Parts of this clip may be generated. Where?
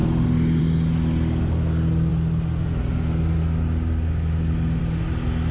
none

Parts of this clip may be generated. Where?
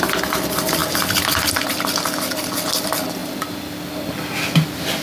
none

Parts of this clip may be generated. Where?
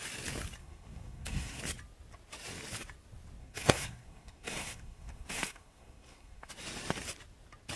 0.6-1.6; 3.4-6.5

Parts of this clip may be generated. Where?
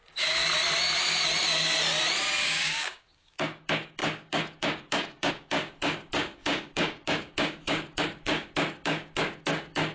0.0-0.4; 2.4-9.9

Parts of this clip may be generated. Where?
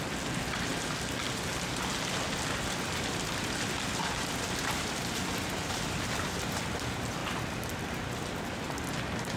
none